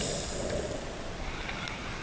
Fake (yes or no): no